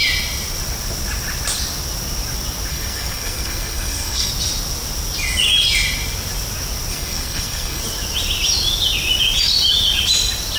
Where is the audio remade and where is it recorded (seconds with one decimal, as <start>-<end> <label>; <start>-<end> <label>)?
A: 0.0-2.7 recorded; 2.7-4.3 remade; 4.3-6.9 recorded; 6.9-7.8 remade; 7.8-10.6 recorded